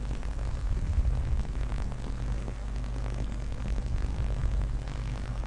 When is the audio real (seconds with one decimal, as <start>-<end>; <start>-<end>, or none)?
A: none